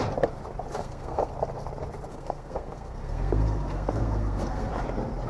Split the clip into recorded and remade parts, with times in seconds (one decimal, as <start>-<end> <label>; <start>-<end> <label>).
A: 0.0-0.8 recorded; 0.8-1.3 remade; 1.3-2.1 recorded; 2.1-4.7 remade; 4.7-5.3 recorded